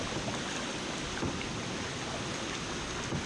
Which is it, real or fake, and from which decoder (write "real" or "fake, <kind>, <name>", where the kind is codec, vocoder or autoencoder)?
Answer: real